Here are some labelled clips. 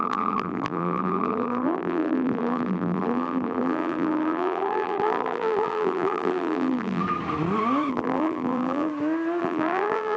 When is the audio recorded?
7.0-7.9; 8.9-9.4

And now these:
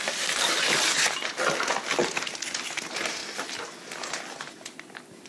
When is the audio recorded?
1.3-2.8; 3.2-4.4

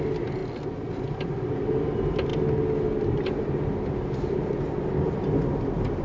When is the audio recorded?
0.0-6.0